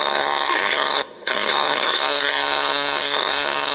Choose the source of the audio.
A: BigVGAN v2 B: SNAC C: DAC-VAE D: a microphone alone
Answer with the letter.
B